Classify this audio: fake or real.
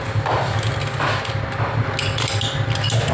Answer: real